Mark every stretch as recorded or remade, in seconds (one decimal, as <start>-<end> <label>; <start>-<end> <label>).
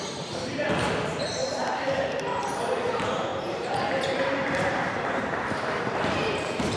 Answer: 0.0-1.6 remade; 1.6-2.6 recorded; 2.6-6.8 remade